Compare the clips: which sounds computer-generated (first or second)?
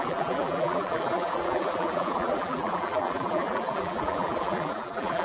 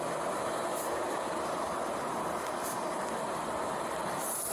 first